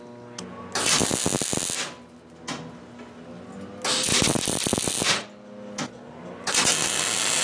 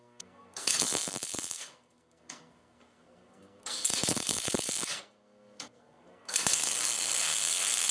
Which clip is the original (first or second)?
first